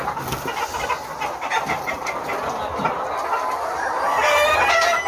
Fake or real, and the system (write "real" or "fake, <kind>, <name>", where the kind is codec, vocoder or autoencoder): real